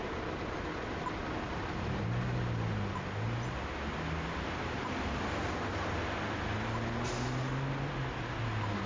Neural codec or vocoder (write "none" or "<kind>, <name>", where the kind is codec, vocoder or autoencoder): none